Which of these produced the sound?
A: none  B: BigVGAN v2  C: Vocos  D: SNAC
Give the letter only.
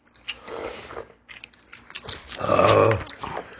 A